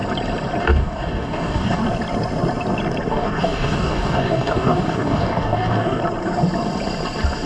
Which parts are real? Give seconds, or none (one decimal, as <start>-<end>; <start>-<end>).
0.0-0.6; 1.8-3.1; 6.0-7.5